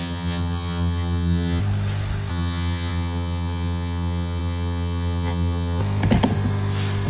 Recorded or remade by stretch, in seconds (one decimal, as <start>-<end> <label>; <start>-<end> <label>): 0.0-1.6 remade; 1.6-2.3 recorded; 2.3-5.8 remade; 5.8-7.1 recorded